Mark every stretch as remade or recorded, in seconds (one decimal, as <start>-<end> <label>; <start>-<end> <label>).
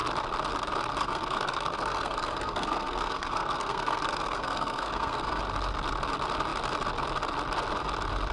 0.0-1.0 recorded; 1.0-5.4 remade; 5.4-8.3 recorded